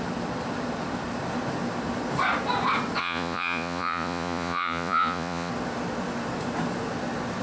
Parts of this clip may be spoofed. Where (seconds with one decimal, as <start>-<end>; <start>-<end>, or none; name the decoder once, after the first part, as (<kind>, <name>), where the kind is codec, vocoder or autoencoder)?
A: 3.0-5.5 (vocoder, Vocos)